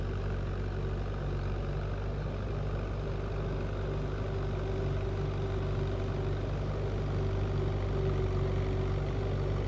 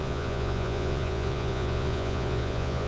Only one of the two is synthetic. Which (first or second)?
second